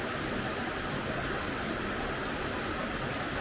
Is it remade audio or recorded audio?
recorded